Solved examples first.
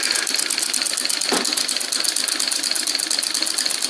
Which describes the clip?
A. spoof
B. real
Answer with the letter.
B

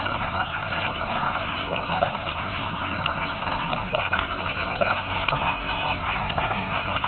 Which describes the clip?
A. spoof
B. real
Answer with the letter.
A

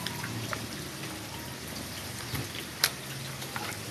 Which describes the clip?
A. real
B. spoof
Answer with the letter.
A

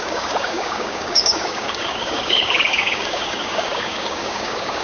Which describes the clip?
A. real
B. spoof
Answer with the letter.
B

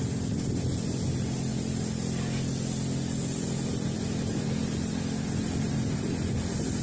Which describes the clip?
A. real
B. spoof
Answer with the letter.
A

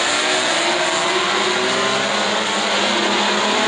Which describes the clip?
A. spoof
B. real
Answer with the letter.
B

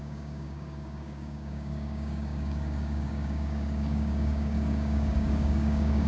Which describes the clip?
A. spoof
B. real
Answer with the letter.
A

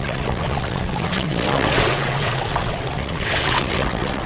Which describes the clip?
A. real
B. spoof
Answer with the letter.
B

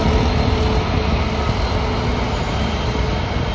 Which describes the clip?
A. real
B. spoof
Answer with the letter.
A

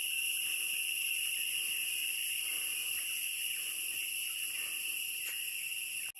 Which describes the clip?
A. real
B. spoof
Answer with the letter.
A